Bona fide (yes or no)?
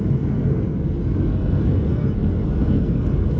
no